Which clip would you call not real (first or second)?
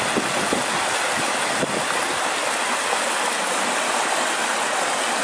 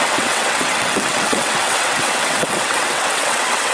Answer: second